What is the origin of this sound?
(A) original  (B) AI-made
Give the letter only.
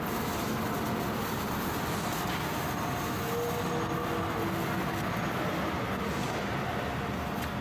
A